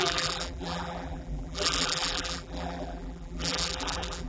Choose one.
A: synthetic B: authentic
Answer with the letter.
A